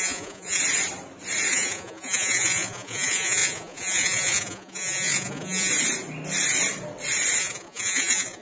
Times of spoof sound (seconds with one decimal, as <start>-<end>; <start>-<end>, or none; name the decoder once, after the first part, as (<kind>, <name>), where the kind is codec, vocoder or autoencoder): 0.0-0.6 (vocoder, Vocos); 1.5-5.7; 7.4-8.4